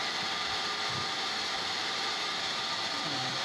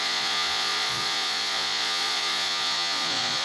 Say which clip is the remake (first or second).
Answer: second